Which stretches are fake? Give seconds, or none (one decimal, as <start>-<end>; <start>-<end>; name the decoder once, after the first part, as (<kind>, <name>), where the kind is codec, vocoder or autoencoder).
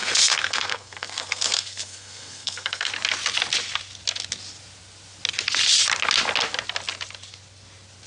0.0-2.9 (codec, SNAC)